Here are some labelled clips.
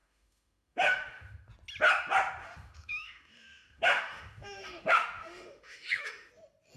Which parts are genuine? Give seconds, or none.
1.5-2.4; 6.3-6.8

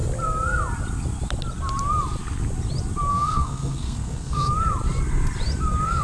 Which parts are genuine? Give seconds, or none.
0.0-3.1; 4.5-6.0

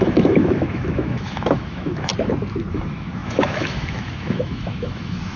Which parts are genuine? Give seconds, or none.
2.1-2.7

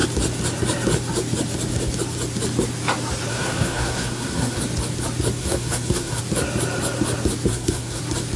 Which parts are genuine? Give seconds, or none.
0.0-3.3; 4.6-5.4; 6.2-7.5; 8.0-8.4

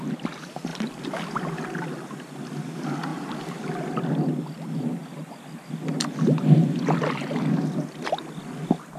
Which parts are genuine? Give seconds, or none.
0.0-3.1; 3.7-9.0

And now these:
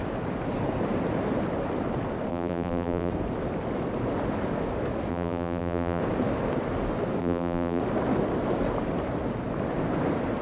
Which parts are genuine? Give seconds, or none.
0.0-2.3; 3.1-5.1; 6.0-7.2; 7.8-10.4